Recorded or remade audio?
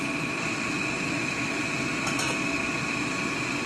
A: recorded